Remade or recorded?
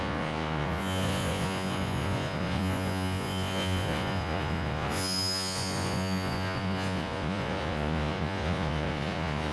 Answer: remade